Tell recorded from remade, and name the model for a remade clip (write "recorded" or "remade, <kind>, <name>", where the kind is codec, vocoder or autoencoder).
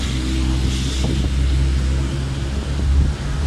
recorded